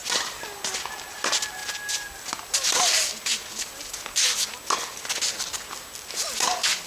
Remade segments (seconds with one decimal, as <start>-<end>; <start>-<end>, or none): none